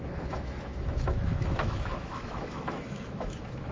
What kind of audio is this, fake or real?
fake